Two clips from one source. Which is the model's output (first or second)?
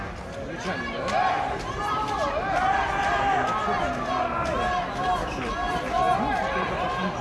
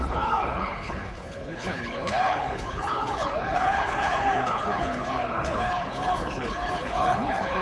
second